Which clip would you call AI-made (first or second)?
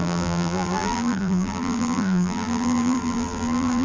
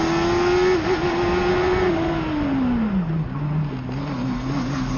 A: first